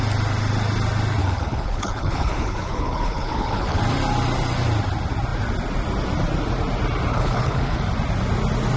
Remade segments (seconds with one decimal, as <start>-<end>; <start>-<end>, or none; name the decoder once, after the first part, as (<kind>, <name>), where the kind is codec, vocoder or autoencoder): 1.2-3.8 (codec, HILCodec); 7.1-7.8